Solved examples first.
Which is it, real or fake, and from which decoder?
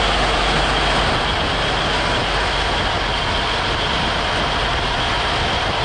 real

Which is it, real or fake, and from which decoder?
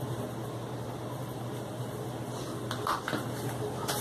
real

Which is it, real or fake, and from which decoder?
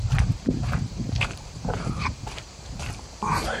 fake, vocoder, BigVGAN v2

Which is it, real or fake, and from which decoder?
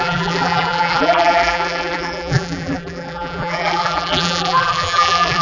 fake, vocoder, BigVGAN v2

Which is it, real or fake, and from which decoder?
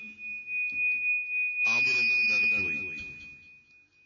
real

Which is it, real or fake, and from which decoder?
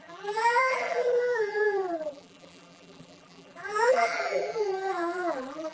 fake, vocoder, BigVGAN v2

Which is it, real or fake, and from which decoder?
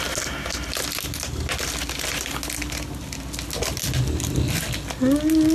real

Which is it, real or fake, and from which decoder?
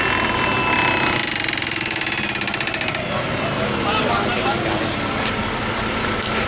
real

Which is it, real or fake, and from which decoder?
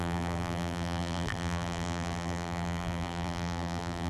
fake, vocoder, BigVGAN v2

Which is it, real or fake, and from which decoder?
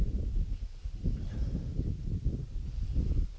real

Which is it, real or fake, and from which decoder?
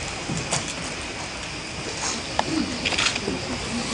real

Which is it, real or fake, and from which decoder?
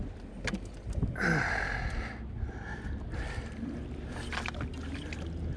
real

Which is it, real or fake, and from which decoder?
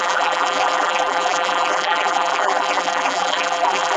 fake, vocoder, BigVGAN v2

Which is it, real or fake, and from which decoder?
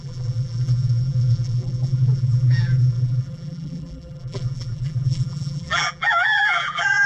fake, vocoder, BigVGAN v2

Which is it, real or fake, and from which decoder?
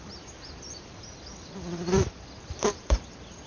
fake, vocoder, BigVGAN v2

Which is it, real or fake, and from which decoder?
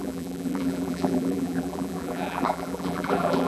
fake, vocoder, BigVGAN v2